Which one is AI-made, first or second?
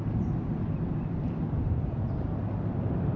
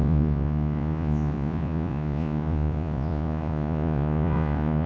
second